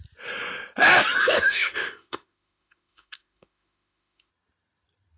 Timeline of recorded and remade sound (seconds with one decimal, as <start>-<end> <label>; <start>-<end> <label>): 0.0-1.2 recorded; 1.2-4.3 remade; 4.3-5.2 recorded